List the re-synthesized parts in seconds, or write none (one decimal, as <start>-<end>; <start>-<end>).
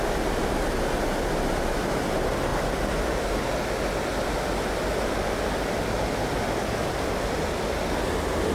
none